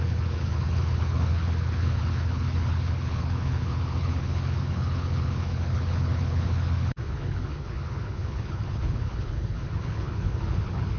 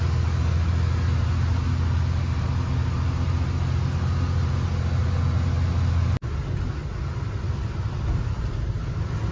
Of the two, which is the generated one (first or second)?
first